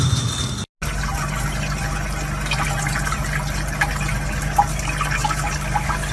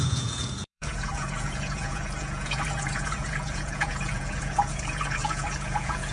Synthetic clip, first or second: second